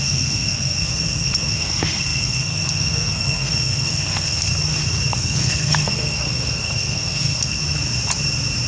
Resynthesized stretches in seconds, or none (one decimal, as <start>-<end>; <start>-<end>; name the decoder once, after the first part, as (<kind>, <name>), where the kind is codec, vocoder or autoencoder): 0.0-4.5 (codec, SNAC); 5.1-7.6